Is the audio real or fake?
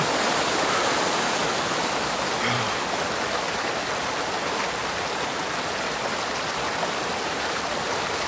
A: real